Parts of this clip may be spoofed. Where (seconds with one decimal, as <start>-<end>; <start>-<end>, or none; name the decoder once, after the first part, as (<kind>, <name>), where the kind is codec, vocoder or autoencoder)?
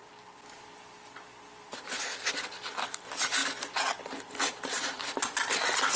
none